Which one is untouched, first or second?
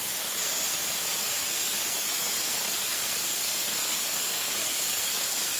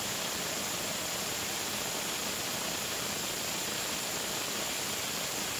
second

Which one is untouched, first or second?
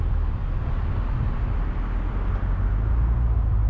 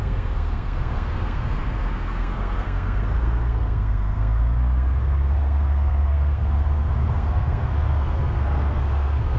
first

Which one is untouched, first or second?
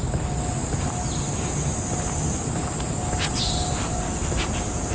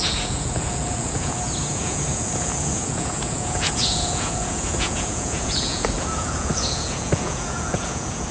first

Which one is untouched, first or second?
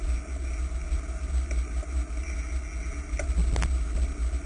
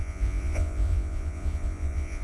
first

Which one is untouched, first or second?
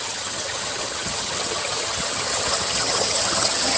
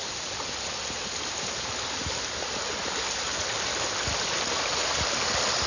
second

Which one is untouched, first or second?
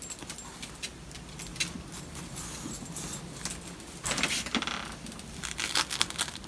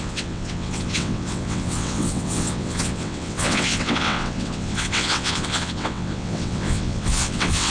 first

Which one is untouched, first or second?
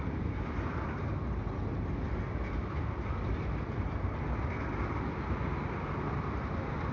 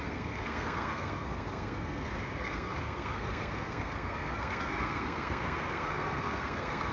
first